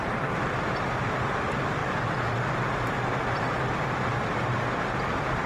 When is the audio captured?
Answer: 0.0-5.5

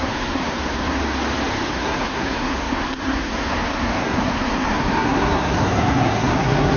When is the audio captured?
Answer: 1.0-1.7

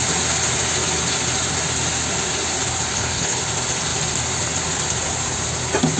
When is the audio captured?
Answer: 0.0-2.9; 3.4-6.0

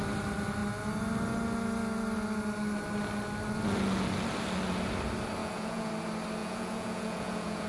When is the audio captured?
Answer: 0.0-5.4; 5.9-6.4

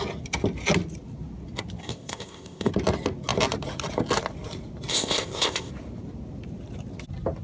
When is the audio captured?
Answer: 0.0-1.8; 2.7-4.9; 5.7-7.4

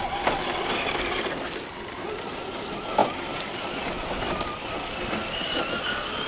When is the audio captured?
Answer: 0.0-6.3

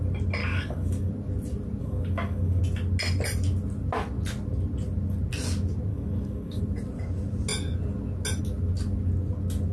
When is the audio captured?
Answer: 0.0-0.4; 1.1-1.8; 2.6-5.9; 6.6-9.7